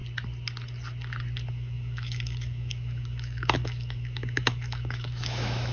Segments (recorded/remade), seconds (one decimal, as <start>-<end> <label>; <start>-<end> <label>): 0.0-1.5 recorded; 1.5-5.7 remade

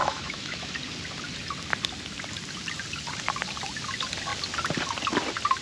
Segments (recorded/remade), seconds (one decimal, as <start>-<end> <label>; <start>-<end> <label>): 0.0-0.7 remade; 0.7-5.6 recorded

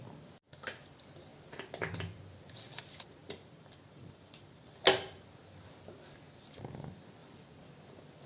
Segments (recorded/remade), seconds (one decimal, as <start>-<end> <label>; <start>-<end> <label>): 0.0-3.2 recorded; 3.2-4.8 remade; 4.8-7.2 recorded; 7.2-7.7 remade; 7.7-8.3 recorded

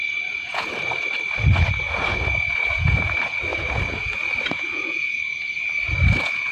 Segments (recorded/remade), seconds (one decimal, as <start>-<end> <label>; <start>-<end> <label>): 0.0-6.5 remade

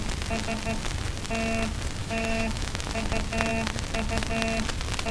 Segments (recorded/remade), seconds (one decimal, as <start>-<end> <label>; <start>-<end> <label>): 0.0-2.0 recorded; 2.0-2.9 remade; 2.9-5.1 recorded

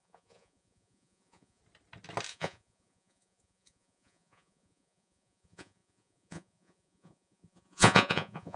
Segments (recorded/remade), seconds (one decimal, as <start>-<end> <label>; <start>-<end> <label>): 0.0-1.6 remade; 1.6-2.3 recorded; 2.3-8.6 remade